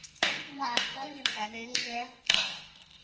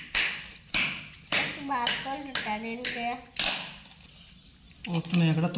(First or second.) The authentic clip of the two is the second